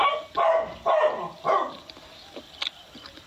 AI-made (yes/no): no